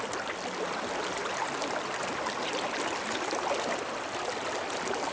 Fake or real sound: real